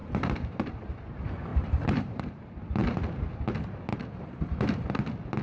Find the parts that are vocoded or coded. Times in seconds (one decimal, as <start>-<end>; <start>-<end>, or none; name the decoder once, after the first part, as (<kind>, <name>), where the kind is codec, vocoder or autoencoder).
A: 0.0-0.7 (vocoder, BigVGAN v2); 1.5-2.2; 3.9-4.9